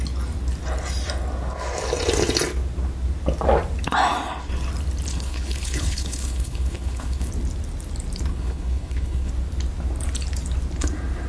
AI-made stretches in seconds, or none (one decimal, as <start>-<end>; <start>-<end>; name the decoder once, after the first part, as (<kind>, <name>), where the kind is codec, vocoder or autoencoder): 5.1-7.3 (codec, HILCodec); 8.3-9.3